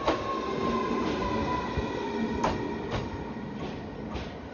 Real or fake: real